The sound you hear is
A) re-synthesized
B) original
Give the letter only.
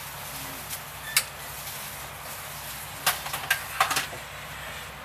B